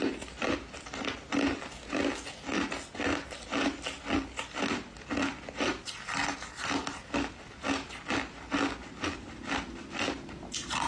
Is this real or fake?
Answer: real